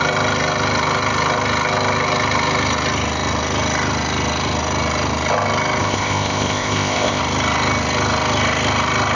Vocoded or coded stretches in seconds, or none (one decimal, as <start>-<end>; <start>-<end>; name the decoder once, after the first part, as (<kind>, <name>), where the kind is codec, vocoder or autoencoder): 5.8-7.2 (codec, ZipCodec)